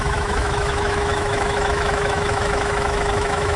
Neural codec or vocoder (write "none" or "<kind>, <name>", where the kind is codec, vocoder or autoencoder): autoencoder, DAC-VAE